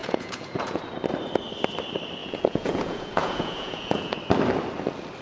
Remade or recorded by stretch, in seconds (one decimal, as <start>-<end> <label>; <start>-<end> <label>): 0.0-0.8 remade; 0.8-2.2 recorded; 2.2-4.2 remade; 4.2-5.2 recorded